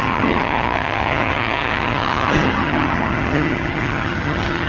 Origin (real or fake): fake